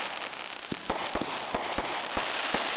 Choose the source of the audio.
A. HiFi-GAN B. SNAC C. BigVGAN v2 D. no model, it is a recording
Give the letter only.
D